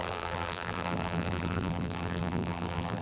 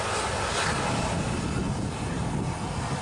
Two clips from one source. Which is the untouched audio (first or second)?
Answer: second